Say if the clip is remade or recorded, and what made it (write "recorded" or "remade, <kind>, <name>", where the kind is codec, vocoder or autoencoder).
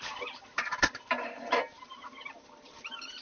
remade, vocoder, BigVGAN v2